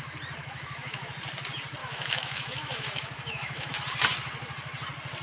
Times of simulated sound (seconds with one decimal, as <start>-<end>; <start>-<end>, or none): 0.4-1.1; 1.8-3.7